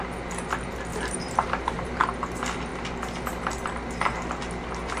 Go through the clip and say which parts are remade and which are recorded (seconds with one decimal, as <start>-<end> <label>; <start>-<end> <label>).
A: 0.0-0.9 recorded; 0.9-2.0 remade; 2.0-5.0 recorded